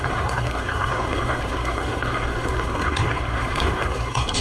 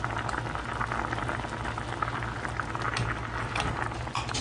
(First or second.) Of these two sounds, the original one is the second